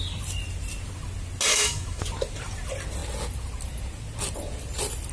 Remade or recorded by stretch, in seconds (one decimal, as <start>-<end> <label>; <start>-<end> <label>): 0.0-1.5 recorded; 1.5-2.0 remade; 2.0-5.1 recorded